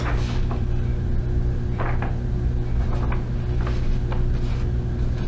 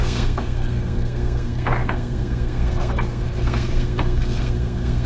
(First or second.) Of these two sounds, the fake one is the second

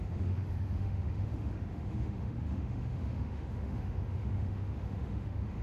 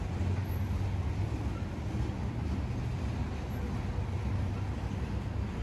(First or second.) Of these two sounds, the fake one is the first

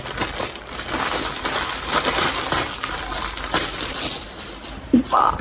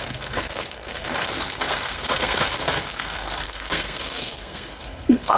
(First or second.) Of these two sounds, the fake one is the second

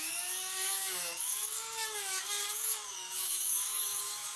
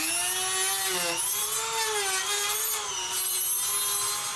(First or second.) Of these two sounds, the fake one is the first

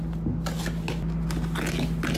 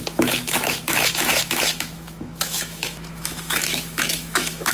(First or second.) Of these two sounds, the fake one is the second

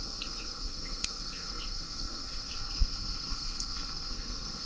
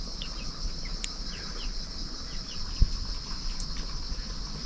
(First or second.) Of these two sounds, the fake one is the first